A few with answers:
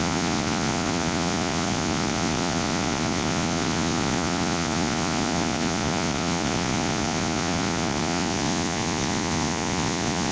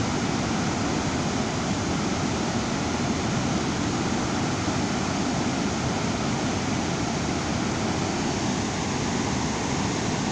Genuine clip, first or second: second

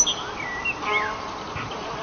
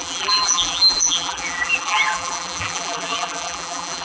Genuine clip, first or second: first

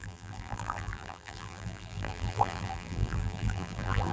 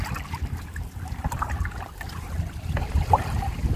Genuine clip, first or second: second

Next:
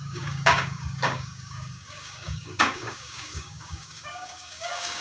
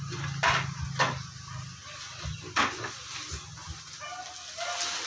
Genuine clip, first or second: second